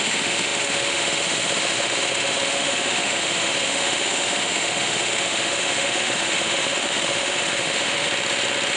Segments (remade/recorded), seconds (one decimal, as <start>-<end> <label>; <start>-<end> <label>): 0.0-8.1 remade; 8.1-8.8 recorded